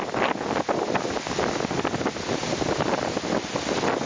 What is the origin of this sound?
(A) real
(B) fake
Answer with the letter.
A